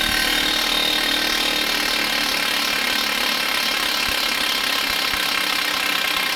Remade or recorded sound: recorded